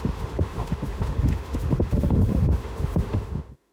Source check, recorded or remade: remade